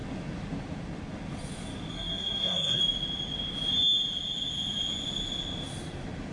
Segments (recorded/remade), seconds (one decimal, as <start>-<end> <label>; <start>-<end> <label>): 0.0-1.9 recorded; 1.9-2.8 remade; 2.8-6.3 recorded